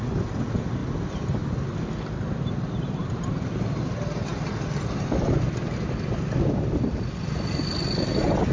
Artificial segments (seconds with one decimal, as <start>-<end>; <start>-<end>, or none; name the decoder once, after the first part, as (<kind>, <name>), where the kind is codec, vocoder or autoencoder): 3.0-3.5 (vocoder, BigVGAN v2)